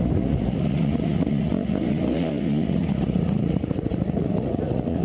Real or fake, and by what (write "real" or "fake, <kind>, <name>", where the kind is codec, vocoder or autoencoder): fake, vocoder, Vocos